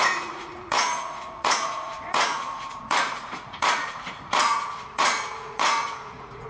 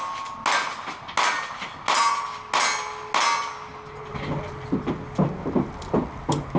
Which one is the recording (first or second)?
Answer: second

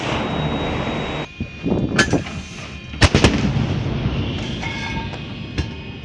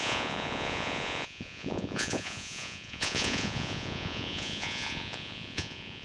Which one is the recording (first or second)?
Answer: first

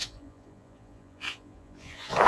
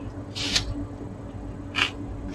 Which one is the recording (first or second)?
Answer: second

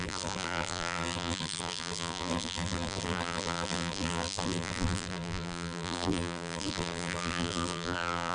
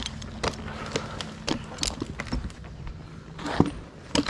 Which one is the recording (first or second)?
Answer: second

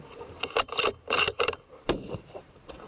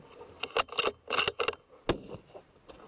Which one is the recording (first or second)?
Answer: second